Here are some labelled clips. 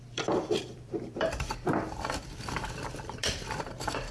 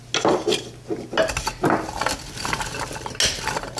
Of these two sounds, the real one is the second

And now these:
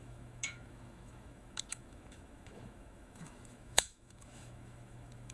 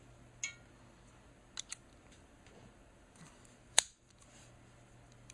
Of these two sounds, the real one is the second